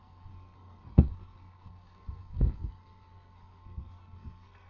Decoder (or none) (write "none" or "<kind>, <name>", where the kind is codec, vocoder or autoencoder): codec, SNAC